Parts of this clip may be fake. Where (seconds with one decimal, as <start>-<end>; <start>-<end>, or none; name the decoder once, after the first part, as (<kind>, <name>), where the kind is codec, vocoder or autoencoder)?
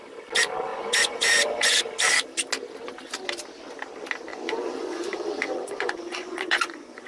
0.7-1.8 (vocoder, Vocos); 4.3-7.1